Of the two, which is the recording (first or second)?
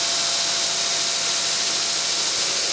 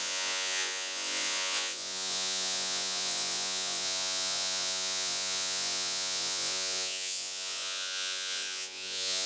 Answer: first